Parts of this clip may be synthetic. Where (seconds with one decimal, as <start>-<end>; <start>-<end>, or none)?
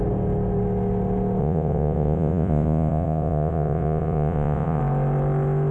1.4-4.8